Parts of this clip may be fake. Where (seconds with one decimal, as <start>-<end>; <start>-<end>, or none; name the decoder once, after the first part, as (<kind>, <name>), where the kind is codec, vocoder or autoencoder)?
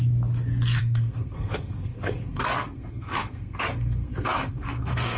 0.8-5.2 (codec, SNAC)